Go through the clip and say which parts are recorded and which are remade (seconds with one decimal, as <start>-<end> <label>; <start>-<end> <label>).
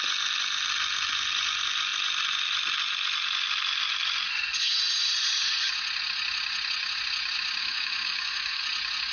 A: 0.0-7.6 recorded; 7.6-8.6 remade; 8.6-9.1 recorded